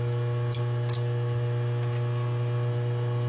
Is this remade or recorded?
recorded